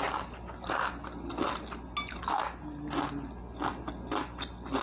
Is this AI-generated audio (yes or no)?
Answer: no